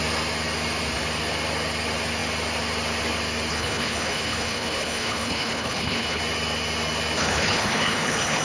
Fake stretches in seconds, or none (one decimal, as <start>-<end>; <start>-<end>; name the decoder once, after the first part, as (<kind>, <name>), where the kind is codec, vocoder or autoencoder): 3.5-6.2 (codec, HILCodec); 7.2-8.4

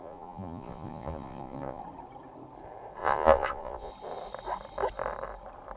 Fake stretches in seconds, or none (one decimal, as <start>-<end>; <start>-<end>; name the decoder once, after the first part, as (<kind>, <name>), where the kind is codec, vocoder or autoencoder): 0.0-1.8 (vocoder, Vocos); 3.0-3.9

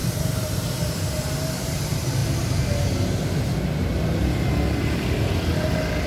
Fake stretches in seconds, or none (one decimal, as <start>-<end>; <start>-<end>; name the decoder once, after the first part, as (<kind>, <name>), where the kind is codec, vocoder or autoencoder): 0.0-2.2 (vocoder, BigVGAN v2)

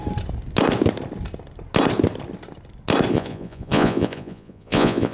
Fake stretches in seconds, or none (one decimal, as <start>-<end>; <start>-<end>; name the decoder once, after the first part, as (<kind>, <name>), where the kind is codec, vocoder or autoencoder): 3.1-5.1 (vocoder, Vocos)

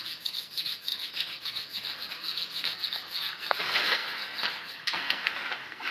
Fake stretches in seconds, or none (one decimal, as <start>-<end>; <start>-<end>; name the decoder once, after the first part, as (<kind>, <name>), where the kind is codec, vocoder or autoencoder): 0.0-5.9 (codec, SNAC)

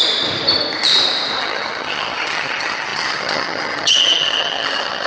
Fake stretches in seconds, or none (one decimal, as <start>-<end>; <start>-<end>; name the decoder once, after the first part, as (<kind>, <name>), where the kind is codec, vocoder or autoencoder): 1.4-5.1 (vocoder, HiFi-GAN)

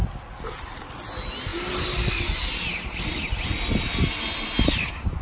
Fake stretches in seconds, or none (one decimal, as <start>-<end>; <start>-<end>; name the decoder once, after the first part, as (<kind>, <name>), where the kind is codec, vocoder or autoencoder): none